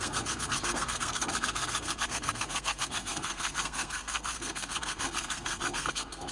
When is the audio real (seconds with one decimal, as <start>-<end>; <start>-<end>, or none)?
none